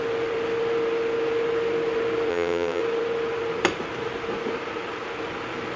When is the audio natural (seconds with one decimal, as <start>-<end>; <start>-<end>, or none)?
0.0-2.3; 2.8-5.8